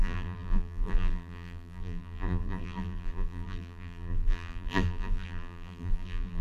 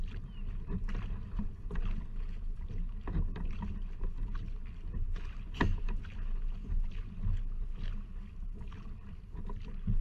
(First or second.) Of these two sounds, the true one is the second